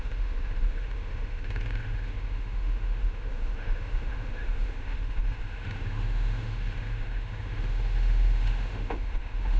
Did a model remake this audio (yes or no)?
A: yes